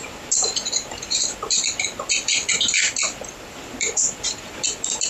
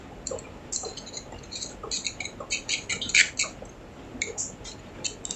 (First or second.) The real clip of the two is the second